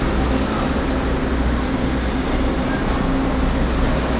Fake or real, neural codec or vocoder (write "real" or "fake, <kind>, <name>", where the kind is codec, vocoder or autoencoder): real